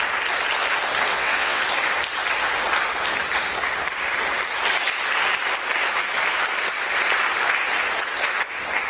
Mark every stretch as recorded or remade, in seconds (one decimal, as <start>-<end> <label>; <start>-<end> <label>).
0.0-1.1 recorded; 1.1-1.6 remade; 1.6-8.9 recorded